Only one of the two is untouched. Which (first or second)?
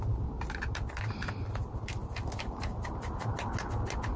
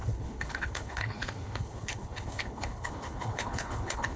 first